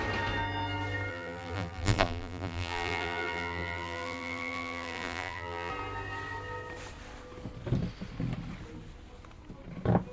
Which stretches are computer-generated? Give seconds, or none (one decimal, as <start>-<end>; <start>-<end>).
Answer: 1.1-5.7

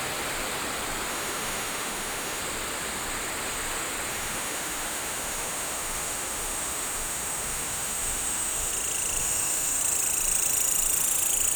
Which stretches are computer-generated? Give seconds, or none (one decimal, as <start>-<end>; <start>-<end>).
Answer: 1.1-2.4; 4.1-8.7; 9.2-9.8